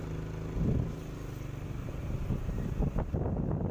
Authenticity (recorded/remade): recorded